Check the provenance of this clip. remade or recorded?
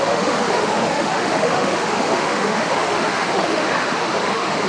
remade